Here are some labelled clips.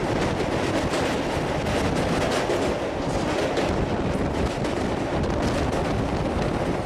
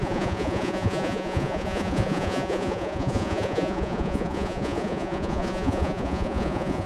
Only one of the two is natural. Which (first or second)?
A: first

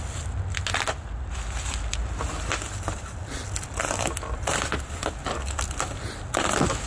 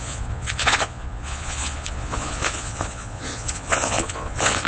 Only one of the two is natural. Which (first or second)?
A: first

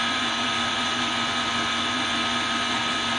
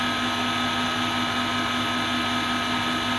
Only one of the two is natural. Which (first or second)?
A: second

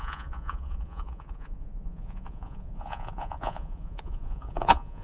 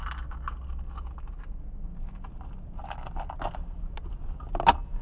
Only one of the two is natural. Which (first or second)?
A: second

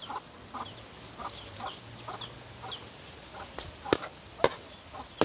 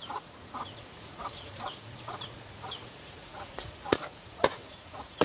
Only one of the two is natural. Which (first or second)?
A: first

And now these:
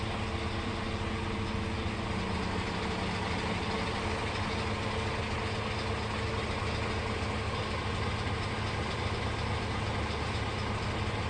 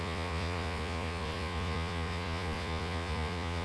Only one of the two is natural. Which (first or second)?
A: first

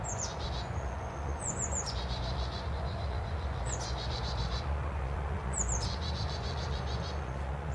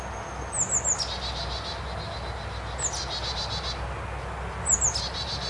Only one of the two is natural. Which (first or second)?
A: second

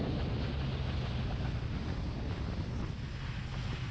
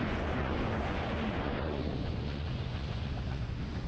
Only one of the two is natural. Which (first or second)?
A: first